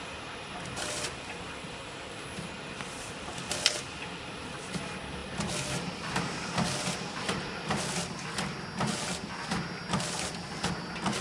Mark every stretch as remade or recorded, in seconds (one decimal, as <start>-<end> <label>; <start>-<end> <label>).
0.0-11.2 recorded